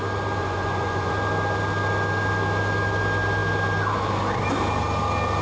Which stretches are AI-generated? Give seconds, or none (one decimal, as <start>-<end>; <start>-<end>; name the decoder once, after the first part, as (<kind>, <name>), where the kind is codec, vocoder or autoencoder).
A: 0.4-1.1 (vocoder, Vocos)